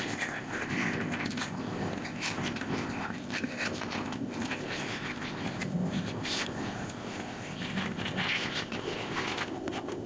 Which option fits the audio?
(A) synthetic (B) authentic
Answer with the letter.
A